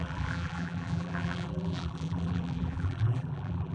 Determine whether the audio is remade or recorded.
remade